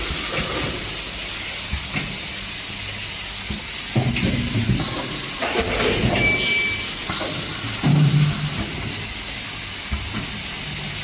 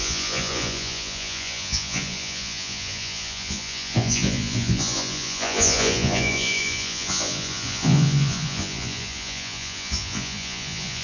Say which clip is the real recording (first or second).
first